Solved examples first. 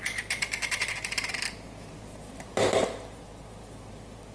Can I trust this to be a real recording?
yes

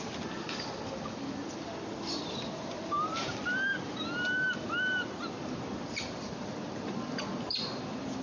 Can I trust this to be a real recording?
no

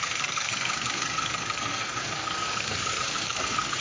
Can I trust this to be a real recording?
no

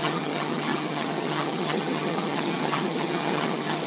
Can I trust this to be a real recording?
no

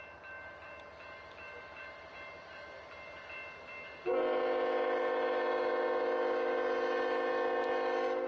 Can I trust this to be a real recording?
yes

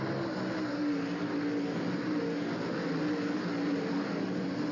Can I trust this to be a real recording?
yes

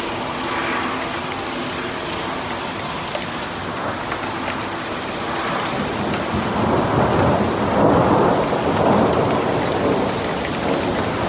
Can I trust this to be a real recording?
yes